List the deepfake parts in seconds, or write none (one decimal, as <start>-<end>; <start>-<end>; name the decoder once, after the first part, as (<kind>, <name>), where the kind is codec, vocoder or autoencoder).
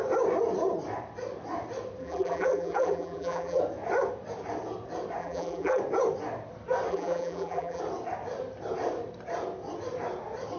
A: 2.0-3.6 (vocoder, BigVGAN v2); 5.2-5.8; 6.9-7.8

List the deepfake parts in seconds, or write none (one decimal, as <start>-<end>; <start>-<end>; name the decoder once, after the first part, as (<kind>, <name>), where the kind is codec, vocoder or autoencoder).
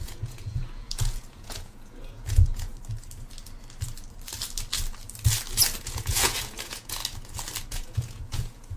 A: 0.0-2.7 (vocoder, Vocos); 5.8-7.0; 7.6-8.8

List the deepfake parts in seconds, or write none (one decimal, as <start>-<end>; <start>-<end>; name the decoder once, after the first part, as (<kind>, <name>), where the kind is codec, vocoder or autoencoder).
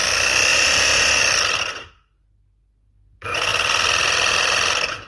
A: 0.5-1.2 (vocoder, BigVGAN v2)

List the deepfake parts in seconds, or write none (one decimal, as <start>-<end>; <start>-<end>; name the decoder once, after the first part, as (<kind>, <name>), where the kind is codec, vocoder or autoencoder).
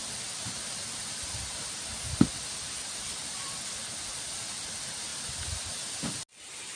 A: none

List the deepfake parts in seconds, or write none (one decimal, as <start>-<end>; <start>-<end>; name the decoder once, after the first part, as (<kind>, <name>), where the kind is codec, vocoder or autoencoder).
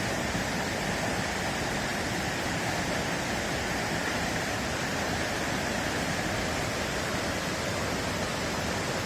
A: 0.0-9.1 (vocoder, BigVGAN v2)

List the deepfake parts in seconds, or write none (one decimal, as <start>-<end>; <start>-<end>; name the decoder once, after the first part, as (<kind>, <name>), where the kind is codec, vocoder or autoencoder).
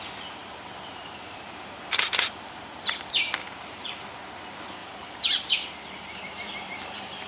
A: 0.4-2.9 (vocoder, BigVGAN v2); 3.4-4.0; 4.8-7.3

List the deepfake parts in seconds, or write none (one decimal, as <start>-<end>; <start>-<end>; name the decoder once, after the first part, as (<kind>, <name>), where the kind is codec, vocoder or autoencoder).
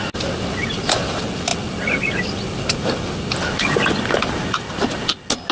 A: none